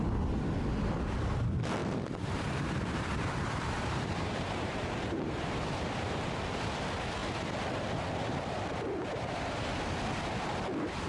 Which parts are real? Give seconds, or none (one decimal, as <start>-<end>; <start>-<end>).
0.0-1.8; 6.6-11.1